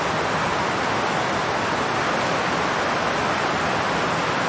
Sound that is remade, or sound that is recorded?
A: recorded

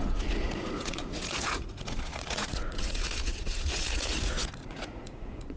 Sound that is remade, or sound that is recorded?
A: remade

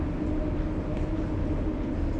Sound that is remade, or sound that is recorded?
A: recorded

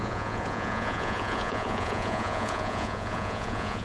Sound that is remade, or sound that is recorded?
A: remade